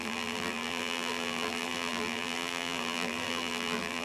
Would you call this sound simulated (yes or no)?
yes